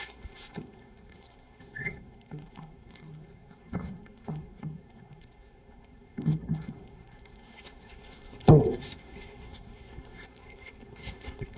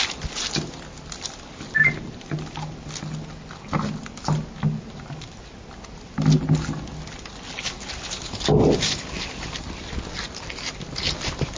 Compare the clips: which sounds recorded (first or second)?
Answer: second